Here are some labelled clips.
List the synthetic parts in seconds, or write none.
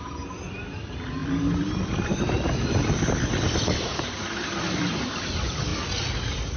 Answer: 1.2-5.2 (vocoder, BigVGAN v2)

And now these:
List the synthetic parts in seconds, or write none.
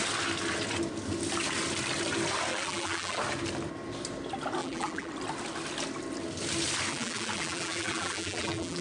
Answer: 2.5-3.2 (vocoder, BigVGAN v2); 4.6-5.1; 6.9-8.8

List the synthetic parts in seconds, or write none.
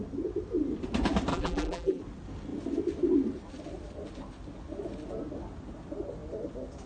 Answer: 1.3-2.0 (vocoder, BigVGAN v2)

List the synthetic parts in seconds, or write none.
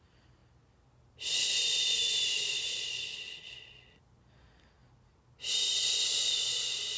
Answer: none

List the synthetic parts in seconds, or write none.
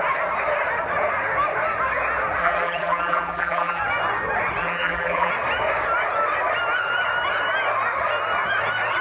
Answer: 2.4-3.8 (vocoder, BigVGAN v2); 4.6-5.3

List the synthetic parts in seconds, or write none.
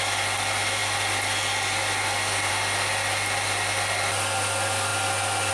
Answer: none